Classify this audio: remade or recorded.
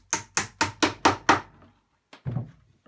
recorded